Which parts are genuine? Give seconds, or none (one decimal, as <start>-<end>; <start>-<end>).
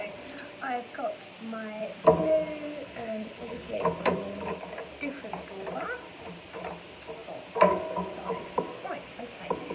0.0-2.8; 3.8-9.7